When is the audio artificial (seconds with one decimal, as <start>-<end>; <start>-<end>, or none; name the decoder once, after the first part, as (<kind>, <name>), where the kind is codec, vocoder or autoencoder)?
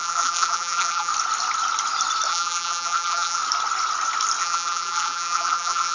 0.0-1.1 (vocoder, BigVGAN v2); 2.3-3.4; 4.4-5.9